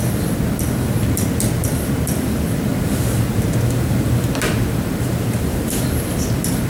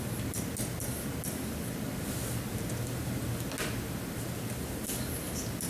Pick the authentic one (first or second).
second